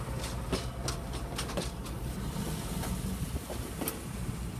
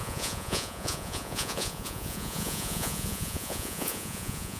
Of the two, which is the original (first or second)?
first